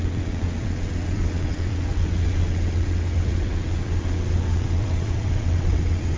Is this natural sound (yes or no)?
no